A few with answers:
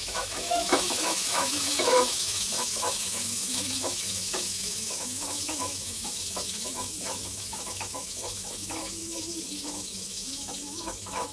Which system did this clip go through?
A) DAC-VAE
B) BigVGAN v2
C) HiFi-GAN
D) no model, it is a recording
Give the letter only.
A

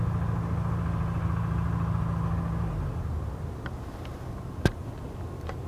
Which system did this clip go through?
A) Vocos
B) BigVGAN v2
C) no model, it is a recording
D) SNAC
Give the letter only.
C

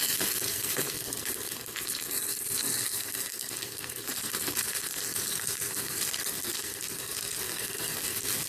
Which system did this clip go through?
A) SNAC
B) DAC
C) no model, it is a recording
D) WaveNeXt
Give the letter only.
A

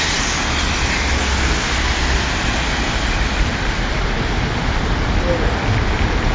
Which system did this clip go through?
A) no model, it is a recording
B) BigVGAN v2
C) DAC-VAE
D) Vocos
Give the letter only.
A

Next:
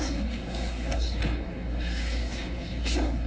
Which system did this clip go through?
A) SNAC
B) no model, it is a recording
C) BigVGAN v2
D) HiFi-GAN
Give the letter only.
A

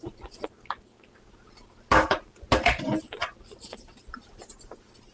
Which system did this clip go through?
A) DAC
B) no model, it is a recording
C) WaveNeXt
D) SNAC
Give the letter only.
B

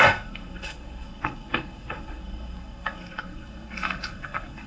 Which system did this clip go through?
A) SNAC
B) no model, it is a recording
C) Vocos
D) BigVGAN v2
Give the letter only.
A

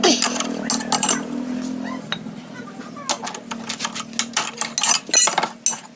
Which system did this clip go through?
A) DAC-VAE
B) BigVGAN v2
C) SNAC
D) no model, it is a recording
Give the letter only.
D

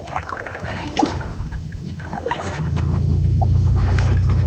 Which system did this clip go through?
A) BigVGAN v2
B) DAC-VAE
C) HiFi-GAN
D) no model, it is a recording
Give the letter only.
B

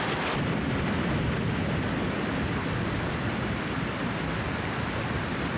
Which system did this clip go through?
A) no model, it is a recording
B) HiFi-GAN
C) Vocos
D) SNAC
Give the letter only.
A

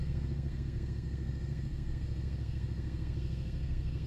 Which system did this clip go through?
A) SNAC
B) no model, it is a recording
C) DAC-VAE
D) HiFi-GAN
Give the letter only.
A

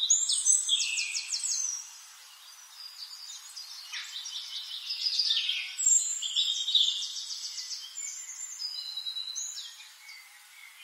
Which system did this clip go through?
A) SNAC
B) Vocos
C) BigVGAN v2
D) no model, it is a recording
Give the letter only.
D